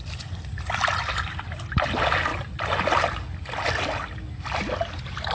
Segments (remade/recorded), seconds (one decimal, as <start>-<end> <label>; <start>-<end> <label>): 0.0-5.3 recorded